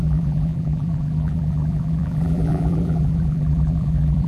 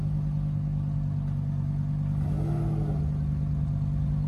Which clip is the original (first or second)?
second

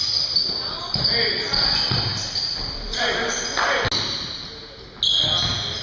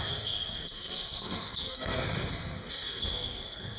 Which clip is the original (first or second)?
first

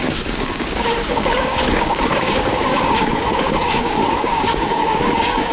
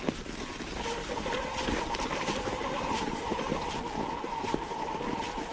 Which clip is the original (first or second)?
second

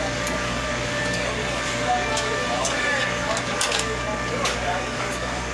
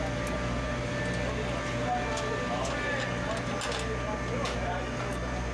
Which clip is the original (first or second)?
second